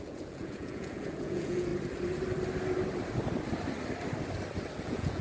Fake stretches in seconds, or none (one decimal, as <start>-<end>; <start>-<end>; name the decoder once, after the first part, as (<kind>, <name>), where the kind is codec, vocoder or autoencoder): 0.0-1.7 (vocoder, Vocos); 4.8-5.2

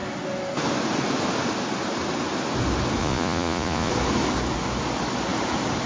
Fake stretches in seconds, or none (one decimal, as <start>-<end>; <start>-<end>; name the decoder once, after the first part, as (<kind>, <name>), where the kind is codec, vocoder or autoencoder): 3.0-3.9 (vocoder, Vocos)

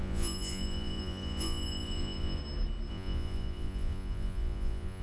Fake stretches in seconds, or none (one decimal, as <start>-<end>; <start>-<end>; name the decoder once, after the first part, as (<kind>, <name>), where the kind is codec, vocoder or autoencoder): 0.0-2.4 (vocoder, Vocos); 2.9-5.0

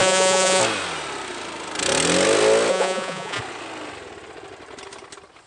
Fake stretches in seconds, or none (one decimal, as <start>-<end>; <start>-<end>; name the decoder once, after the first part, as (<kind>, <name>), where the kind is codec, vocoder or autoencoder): 0.0-0.6 (vocoder, Vocos); 2.7-3.4

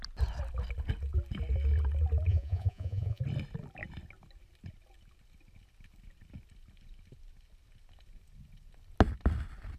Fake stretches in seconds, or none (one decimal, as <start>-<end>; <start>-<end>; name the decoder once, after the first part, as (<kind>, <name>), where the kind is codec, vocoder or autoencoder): 2.3-3.2 (vocoder, Vocos)

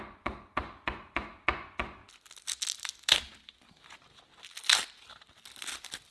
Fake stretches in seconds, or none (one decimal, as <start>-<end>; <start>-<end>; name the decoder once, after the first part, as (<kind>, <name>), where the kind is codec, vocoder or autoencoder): 0.0-2.0 (vocoder, Vocos)

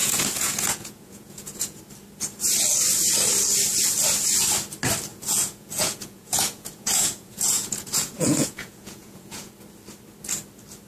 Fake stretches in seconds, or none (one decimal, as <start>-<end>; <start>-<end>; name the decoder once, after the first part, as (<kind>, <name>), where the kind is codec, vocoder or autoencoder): 0.0-1.8 (vocoder, Vocos); 5.1-9.5